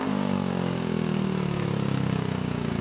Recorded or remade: remade